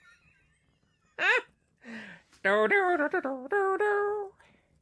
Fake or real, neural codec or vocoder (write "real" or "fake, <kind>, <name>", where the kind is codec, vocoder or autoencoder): real